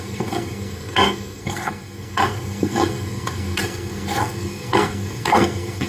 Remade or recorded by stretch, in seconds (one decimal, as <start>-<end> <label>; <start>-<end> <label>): 0.0-5.9 remade